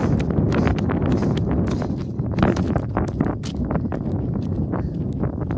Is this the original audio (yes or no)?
yes